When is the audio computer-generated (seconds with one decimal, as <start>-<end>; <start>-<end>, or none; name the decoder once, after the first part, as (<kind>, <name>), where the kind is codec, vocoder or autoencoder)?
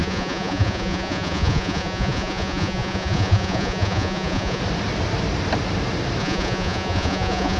0.0-4.6 (vocoder, Vocos); 6.2-7.6